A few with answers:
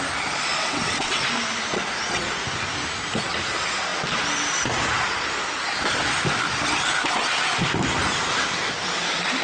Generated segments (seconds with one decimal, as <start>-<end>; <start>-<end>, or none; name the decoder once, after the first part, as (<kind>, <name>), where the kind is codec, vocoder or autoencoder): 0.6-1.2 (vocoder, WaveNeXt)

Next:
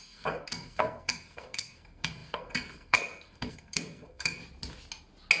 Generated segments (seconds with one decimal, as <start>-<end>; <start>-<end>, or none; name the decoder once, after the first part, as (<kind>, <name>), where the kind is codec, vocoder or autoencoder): 0.0-4.4 (codec, SNAC)

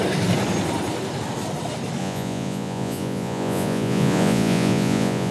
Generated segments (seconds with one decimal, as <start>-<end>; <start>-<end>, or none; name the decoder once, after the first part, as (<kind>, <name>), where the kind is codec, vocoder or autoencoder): 2.0-5.3 (vocoder, Vocos)

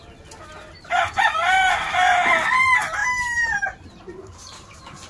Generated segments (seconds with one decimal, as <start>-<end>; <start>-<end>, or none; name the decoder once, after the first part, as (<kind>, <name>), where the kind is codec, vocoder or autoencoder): 3.0-5.1 (vocoder, BigVGAN v2)

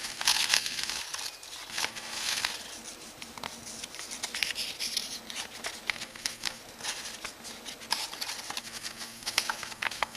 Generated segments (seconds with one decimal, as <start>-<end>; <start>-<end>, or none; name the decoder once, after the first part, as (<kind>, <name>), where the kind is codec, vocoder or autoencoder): 0.0-1.0 (codec, SNAC); 1.7-2.5; 5.9-6.6; 8.6-10.2